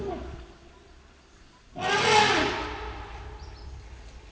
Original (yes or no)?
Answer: yes